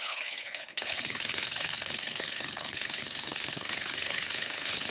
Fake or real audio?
fake